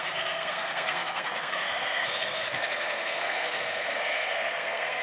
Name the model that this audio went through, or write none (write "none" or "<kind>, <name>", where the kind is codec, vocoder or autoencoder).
codec, SNAC